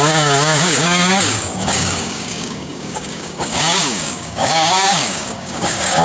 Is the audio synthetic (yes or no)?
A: yes